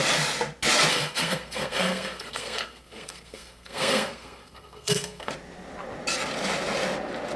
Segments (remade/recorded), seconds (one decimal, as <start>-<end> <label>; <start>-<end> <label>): 0.0-0.9 recorded; 0.9-5.3 remade; 5.3-7.4 recorded